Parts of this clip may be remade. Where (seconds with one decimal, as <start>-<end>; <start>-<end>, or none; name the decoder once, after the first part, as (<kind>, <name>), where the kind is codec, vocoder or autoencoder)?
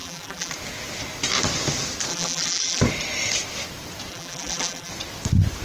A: 0.0-0.5 (vocoder, BigVGAN v2); 2.1-2.8; 4.1-4.9